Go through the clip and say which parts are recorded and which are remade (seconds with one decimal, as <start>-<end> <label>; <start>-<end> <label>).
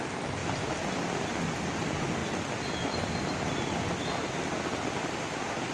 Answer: 0.0-5.7 recorded